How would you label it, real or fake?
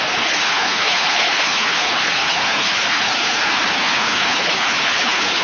fake